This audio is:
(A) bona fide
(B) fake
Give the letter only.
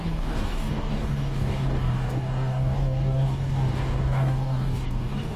B